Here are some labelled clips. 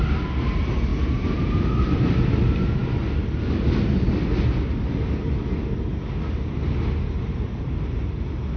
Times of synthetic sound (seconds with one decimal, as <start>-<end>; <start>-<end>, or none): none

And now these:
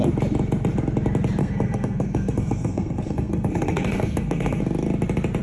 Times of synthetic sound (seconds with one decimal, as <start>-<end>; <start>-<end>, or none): 1.4-4.6

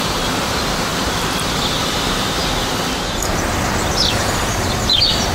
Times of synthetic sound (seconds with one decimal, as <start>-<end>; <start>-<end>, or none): 0.0-2.4; 4.2-5.3